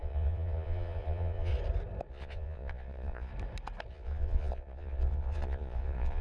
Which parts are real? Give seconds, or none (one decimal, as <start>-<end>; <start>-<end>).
1.5-2.1; 3.3-3.9